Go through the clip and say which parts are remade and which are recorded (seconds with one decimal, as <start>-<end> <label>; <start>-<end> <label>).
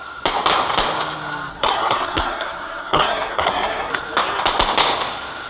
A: 0.0-1.5 recorded; 1.5-3.9 remade; 3.9-5.5 recorded